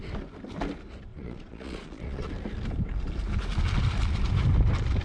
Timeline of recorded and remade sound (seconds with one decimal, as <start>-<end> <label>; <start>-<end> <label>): 0.0-1.1 recorded; 1.1-2.3 remade; 2.3-5.0 recorded